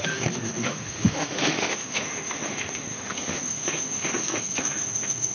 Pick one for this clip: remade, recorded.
remade